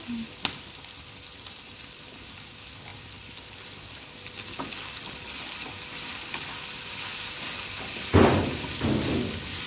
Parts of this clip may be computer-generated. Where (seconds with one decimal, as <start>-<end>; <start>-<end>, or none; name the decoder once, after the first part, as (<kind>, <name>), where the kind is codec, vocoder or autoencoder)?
none